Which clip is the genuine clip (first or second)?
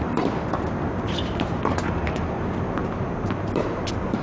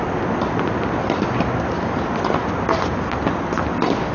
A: second